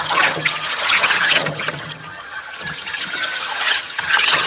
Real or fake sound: fake